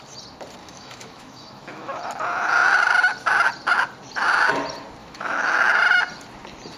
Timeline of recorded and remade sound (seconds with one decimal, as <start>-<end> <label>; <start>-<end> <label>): 0.0-0.6 recorded; 0.6-2.0 remade; 2.0-5.0 recorded; 5.0-5.8 remade; 5.8-6.8 recorded